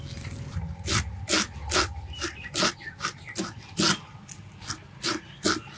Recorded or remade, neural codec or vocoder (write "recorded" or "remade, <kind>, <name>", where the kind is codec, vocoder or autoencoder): recorded